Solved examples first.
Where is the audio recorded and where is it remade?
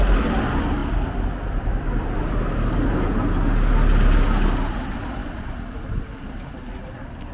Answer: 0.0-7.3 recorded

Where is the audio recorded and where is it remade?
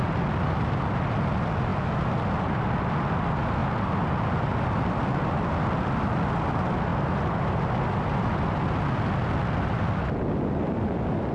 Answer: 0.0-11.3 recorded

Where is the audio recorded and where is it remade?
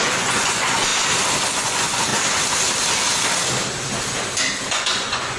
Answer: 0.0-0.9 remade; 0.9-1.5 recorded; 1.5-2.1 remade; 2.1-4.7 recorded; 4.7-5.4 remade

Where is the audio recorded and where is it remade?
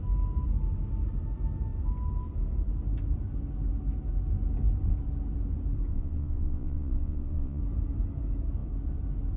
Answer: 0.0-5.9 recorded; 5.9-7.6 remade; 7.6-9.4 recorded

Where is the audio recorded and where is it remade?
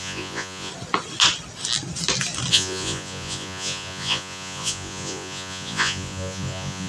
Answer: 0.0-0.7 remade; 0.7-2.5 recorded; 2.5-6.9 remade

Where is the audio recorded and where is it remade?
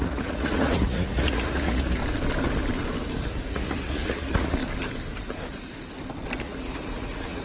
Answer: 0.0-2.0 remade; 2.0-3.5 recorded; 3.5-4.6 remade; 4.6-6.4 recorded; 6.4-7.4 remade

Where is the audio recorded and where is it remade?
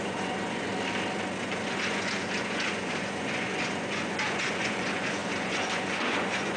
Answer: 0.0-0.7 remade; 0.7-1.4 recorded; 1.4-6.6 remade